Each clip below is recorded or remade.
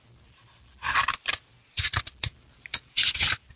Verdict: recorded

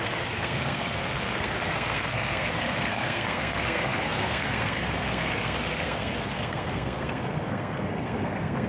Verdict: remade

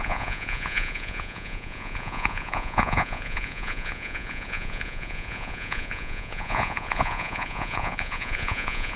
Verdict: remade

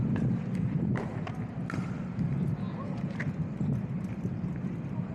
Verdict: remade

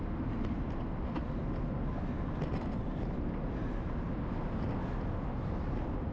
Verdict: recorded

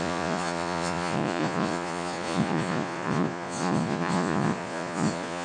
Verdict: remade